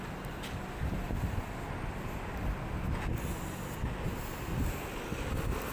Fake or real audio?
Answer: real